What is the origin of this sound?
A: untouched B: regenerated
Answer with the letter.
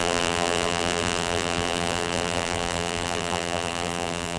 B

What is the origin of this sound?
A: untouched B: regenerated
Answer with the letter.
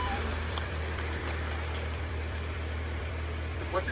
B